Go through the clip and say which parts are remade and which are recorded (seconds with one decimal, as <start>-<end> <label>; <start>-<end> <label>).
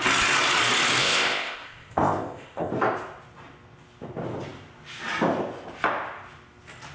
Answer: 0.0-1.0 recorded; 1.0-2.7 remade; 2.7-6.9 recorded